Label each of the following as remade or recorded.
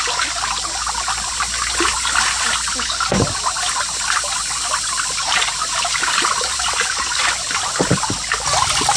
recorded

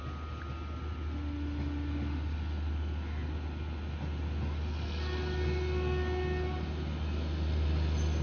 recorded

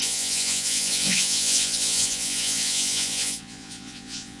remade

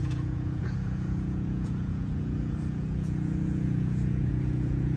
remade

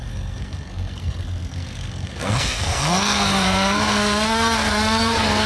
remade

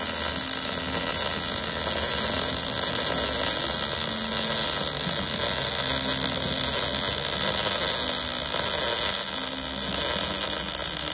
recorded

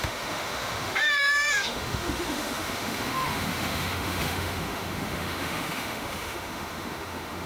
remade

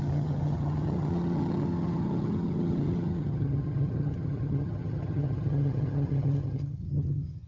remade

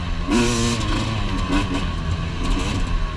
recorded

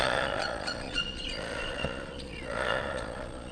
remade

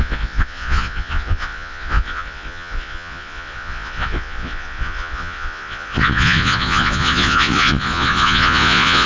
remade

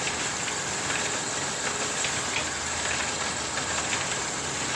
recorded